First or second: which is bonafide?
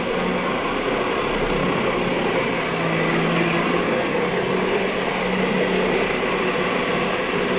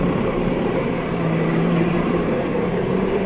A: first